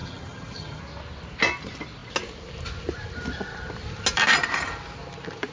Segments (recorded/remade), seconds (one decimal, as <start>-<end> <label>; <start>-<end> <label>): 0.0-0.8 remade; 0.8-5.5 recorded